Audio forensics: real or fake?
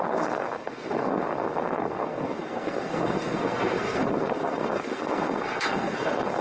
fake